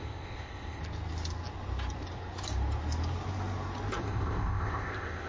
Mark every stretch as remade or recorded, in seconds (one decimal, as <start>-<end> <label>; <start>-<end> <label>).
0.0-0.8 remade; 0.8-4.0 recorded; 4.0-5.3 remade

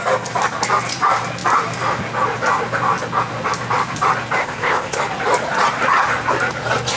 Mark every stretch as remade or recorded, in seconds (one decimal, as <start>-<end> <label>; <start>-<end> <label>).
0.0-4.4 recorded; 4.4-5.0 remade; 5.0-7.0 recorded